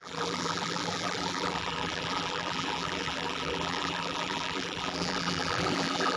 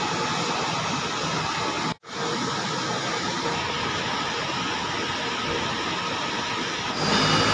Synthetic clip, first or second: first